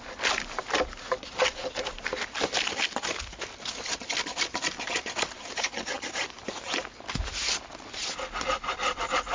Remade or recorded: recorded